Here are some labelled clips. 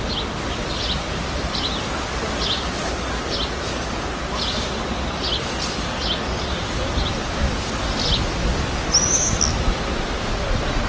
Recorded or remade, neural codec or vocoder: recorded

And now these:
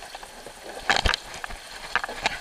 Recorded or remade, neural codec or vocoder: recorded